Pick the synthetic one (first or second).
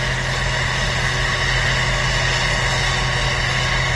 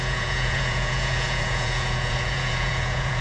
second